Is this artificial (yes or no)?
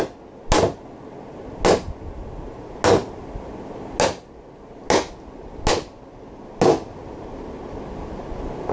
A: no